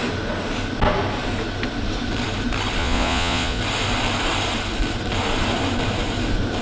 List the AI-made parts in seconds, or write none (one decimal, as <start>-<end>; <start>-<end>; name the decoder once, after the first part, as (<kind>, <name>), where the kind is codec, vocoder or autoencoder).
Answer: 2.8-3.6 (vocoder, Vocos)